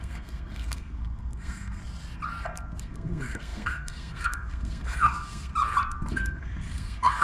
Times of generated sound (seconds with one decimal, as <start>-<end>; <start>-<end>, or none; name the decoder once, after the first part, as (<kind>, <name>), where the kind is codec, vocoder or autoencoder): 0.0-1.8 (codec, SNAC); 2.8-5.5; 6.1-7.2